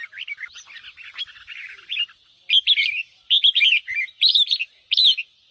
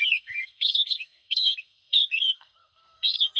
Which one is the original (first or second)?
first